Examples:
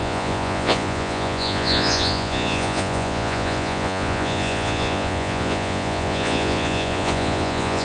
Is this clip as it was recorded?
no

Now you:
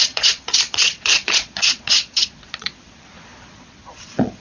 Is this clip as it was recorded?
no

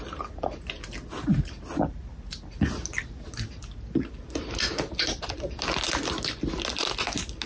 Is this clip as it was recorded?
yes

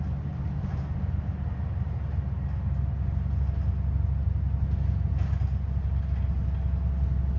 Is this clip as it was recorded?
yes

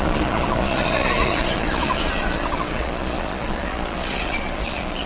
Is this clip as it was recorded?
no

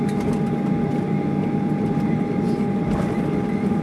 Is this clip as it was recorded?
yes